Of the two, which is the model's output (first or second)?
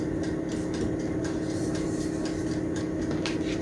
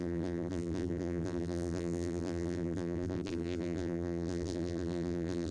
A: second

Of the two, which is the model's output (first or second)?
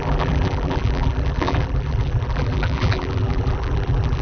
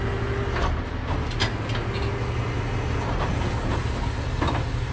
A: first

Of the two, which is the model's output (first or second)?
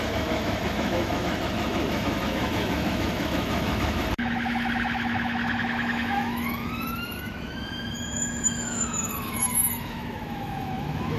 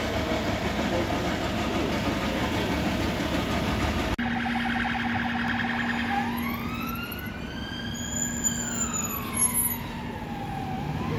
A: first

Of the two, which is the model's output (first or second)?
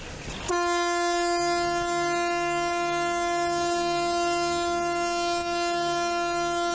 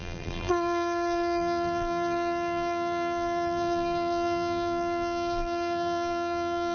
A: second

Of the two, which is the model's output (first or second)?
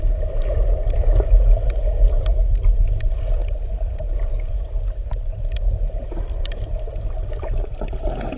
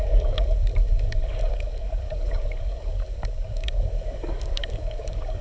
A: second